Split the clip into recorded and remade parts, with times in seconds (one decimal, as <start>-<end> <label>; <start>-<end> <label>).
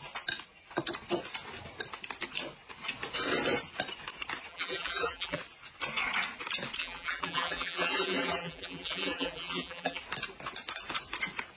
0.0-4.5 recorded; 4.5-5.4 remade; 5.4-6.8 recorded; 6.8-10.0 remade; 10.0-11.6 recorded